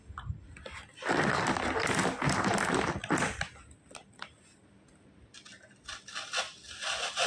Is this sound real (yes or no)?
yes